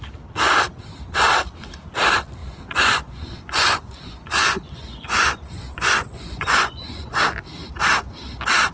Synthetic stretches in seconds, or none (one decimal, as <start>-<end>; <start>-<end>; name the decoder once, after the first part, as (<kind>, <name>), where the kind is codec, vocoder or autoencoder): 2.4-7.2 (vocoder, Vocos)